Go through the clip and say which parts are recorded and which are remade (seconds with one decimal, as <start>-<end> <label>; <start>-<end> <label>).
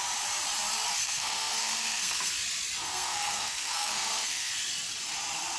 0.0-1.0 recorded; 1.0-2.3 remade; 2.3-2.8 recorded; 2.8-4.5 remade; 4.5-5.6 recorded